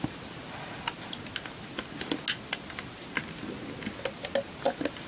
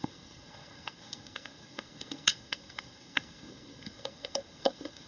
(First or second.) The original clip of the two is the first